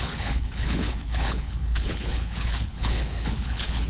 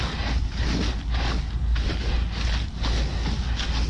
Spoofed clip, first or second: first